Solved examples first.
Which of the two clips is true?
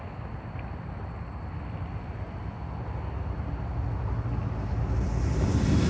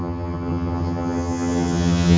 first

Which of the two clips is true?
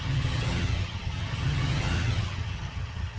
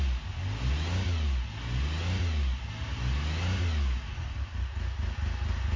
second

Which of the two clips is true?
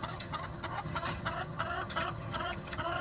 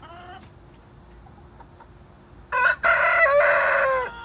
second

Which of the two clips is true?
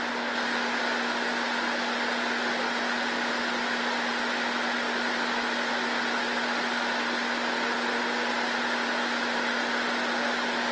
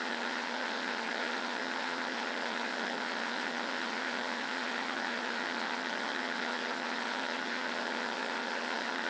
first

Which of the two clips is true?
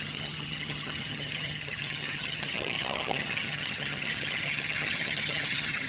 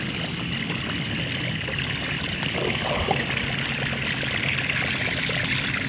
second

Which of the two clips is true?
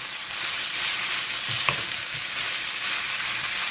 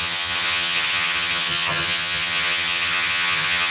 first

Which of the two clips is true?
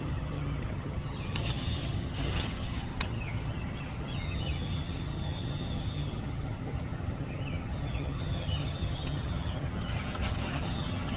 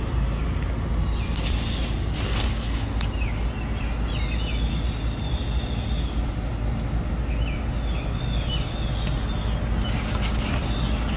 second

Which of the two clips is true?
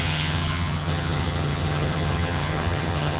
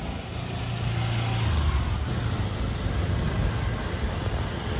second